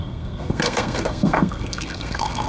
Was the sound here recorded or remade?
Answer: remade